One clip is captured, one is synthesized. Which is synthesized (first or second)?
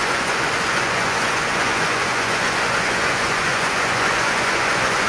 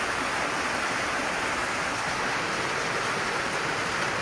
first